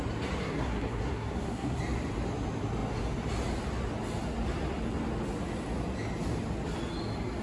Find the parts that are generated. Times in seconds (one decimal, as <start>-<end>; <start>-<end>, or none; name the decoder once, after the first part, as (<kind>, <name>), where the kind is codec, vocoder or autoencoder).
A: 0.4-1.8 (codec, SNAC)